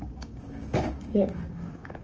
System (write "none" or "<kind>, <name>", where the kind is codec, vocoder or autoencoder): codec, DAC